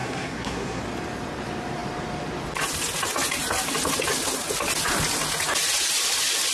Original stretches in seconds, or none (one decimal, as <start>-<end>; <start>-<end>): 0.8-6.5

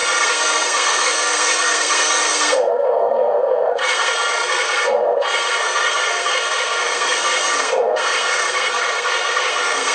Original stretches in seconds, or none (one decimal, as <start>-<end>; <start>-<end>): none

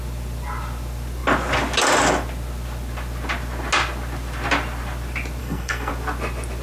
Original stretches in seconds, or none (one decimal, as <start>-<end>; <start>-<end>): 0.0-5.4; 5.9-6.6

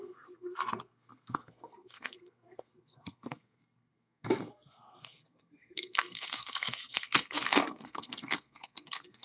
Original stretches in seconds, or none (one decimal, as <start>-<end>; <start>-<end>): none

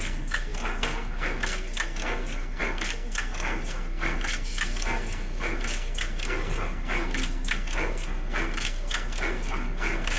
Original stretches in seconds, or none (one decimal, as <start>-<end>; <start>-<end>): none

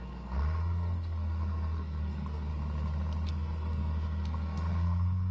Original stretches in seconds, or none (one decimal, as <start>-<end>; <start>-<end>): 2.5-3.3